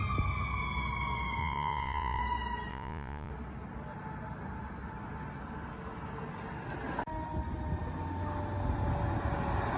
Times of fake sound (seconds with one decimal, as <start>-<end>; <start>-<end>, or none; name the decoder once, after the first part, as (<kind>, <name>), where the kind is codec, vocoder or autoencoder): 1.4-2.2 (vocoder, Vocos); 2.7-3.3